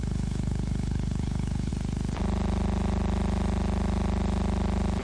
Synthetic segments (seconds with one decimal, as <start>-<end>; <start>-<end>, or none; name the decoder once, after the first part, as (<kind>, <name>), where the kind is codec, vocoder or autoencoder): 0.0-1.7 (codec, HILCodec)